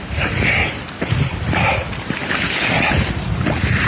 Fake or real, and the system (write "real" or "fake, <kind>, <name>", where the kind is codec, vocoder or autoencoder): real